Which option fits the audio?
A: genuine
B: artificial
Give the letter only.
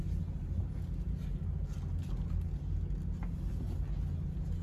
A